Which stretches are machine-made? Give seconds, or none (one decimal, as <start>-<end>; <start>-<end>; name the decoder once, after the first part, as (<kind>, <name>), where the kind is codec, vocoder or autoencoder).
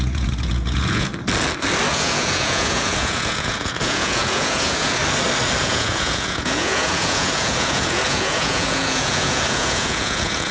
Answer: 0.0-1.1 (vocoder, Vocos); 1.9-5.0; 5.6-10.5